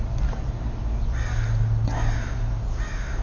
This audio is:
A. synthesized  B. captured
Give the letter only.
B